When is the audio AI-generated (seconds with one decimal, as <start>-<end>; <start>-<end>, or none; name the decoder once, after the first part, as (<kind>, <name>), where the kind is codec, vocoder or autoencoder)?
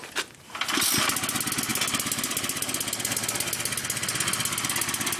none